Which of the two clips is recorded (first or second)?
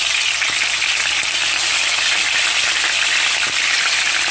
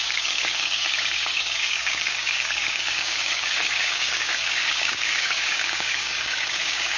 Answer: first